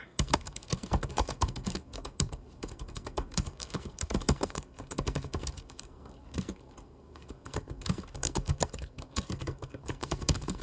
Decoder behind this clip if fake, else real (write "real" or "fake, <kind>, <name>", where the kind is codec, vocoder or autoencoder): fake, codec, SNAC